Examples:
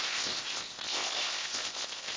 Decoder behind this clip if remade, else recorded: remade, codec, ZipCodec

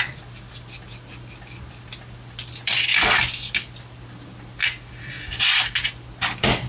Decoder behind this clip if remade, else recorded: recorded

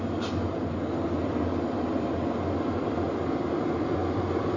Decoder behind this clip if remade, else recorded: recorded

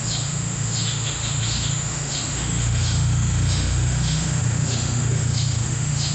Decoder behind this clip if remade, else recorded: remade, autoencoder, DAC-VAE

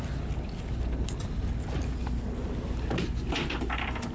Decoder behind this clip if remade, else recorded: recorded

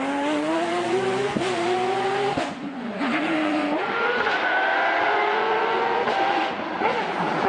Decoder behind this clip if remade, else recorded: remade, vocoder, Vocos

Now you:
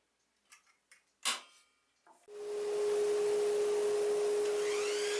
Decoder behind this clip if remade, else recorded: recorded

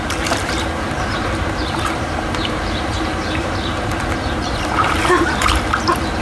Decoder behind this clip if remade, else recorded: remade, vocoder, BigVGAN v2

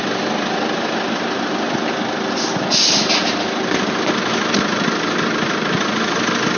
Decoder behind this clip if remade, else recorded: recorded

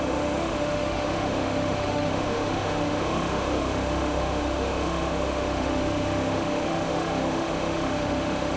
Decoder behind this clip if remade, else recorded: remade, autoencoder, DAC-VAE